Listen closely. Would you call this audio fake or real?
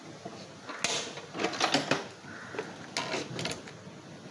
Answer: real